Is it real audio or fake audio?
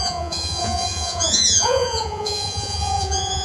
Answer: fake